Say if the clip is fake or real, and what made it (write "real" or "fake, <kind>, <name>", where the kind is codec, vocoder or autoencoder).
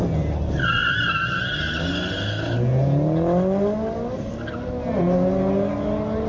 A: real